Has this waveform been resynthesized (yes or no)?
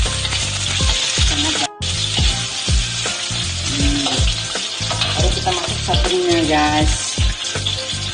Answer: no